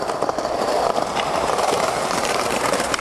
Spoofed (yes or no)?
yes